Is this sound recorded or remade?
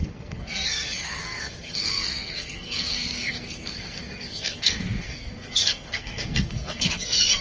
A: remade